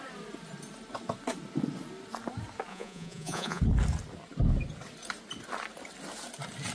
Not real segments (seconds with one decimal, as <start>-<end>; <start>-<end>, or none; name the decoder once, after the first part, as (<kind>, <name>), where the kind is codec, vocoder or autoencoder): 2.7-3.6 (vocoder, Vocos)